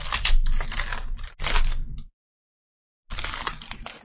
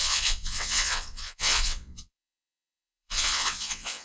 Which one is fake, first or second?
second